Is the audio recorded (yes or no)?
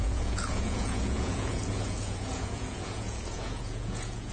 no